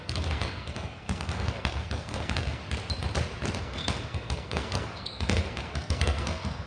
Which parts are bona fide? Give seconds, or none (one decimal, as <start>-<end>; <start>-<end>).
2.6-3.6